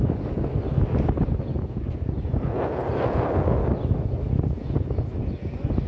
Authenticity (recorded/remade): recorded